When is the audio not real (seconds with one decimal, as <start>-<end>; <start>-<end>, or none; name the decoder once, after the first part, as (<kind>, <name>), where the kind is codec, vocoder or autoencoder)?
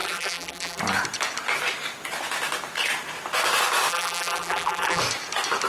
0.0-0.8 (vocoder, BigVGAN v2); 3.9-5.0